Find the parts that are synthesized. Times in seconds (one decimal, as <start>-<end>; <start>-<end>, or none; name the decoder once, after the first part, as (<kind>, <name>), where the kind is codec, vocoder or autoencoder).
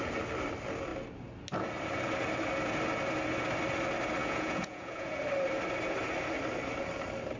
4.2-5.2 (vocoder, Vocos)